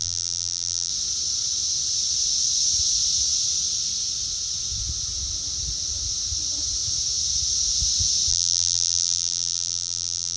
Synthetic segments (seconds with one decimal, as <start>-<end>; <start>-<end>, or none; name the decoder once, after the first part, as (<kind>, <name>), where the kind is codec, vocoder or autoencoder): 0.0-0.9 (vocoder, BigVGAN v2); 8.3-10.4